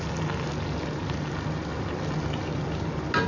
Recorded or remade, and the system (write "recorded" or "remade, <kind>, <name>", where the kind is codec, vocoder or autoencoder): recorded